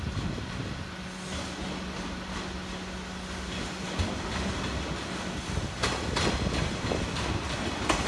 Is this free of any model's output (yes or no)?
yes